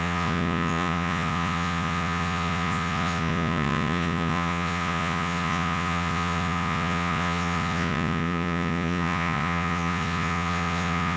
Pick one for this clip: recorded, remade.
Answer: remade